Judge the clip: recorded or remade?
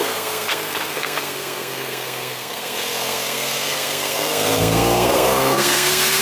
remade